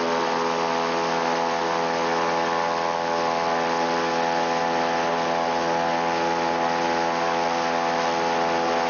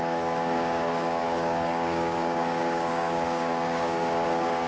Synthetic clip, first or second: second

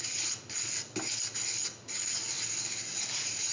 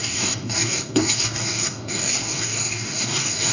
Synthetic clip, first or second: second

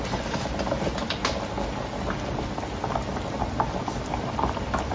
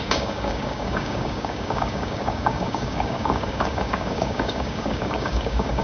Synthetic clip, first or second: second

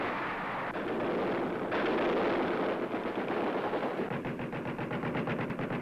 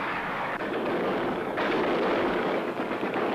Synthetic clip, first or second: second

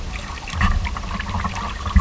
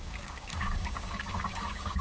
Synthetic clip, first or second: second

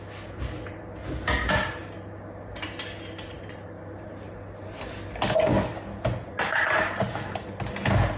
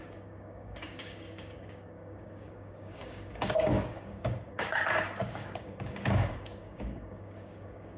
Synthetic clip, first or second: second